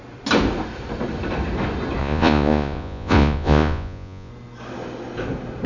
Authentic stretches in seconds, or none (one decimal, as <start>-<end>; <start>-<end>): 0.0-2.0; 4.3-5.7